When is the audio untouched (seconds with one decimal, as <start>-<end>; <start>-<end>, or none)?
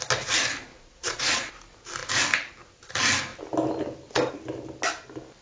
0.0-0.7; 1.5-5.4